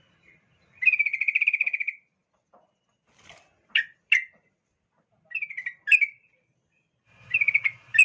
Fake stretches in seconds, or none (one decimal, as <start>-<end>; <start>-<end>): none